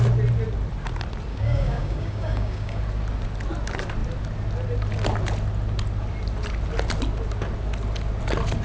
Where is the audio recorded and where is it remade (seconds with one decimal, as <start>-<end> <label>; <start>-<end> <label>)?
0.0-1.3 recorded; 1.3-2.8 remade; 2.8-8.6 recorded